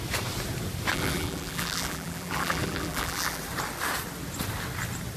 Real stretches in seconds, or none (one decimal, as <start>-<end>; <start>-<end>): 0.0-0.9; 3.4-5.2